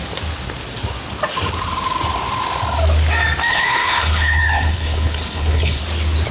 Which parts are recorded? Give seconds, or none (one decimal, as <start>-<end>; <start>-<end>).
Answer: 0.0-3.5; 5.8-6.3